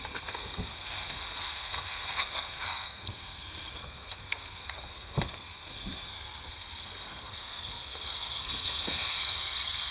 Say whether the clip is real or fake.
fake